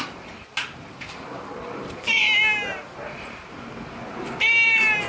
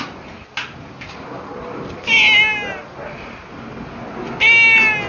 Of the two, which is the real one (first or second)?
second